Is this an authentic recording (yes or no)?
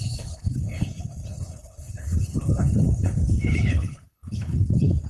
no